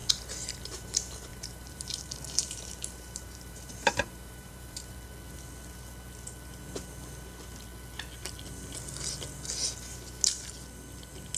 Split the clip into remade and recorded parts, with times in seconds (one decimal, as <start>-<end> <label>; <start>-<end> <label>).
0.0-1.3 recorded; 1.3-4.9 remade; 4.9-11.4 recorded